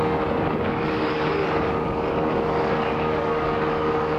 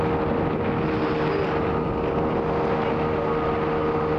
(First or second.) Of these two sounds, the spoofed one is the first